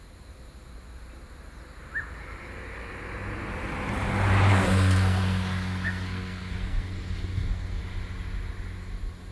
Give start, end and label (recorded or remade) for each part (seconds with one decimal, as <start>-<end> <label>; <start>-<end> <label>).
0.0-4.5 recorded; 4.5-7.8 remade; 7.8-9.3 recorded